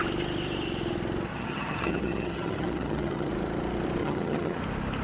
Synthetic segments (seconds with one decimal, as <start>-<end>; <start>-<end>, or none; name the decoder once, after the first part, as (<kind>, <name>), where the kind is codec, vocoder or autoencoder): 1.3-3.3 (vocoder, HiFi-GAN); 4.0-4.6